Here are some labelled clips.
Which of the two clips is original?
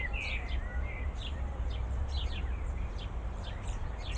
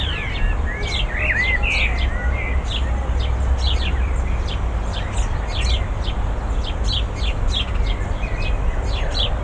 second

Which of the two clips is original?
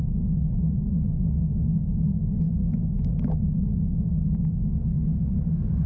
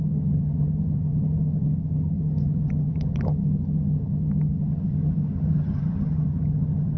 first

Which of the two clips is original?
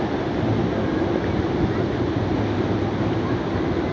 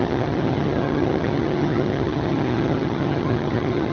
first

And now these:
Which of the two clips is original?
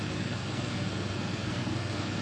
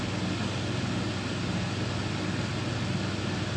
second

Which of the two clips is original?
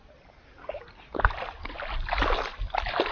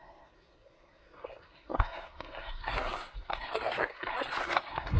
first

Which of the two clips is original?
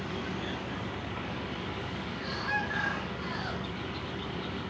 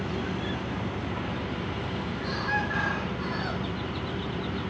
second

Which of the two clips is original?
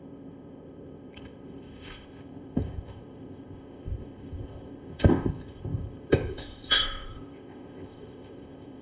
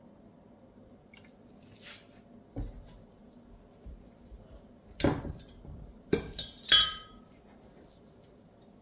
second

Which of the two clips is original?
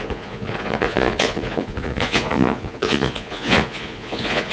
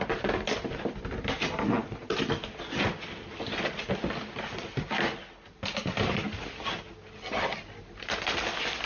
second